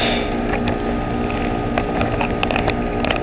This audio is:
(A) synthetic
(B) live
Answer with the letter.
B